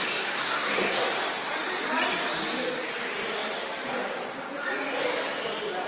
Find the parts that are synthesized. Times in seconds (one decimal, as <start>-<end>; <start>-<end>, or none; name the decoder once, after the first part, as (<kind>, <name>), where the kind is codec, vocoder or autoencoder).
0.4-1.1 (codec, SNAC)